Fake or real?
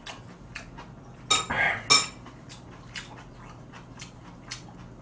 real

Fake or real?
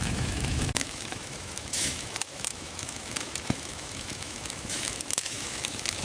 fake